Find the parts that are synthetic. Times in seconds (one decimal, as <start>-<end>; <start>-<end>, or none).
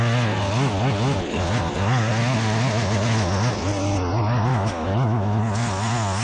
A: 4.5-5.4